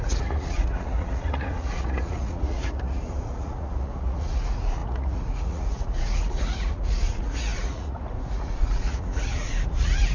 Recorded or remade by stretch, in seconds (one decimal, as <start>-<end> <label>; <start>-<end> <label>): 0.0-10.1 remade